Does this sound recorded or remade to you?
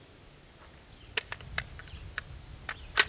recorded